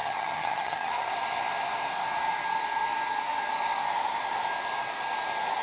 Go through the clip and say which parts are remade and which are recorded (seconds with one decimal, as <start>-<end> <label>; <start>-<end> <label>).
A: 0.0-1.1 remade; 1.1-5.6 recorded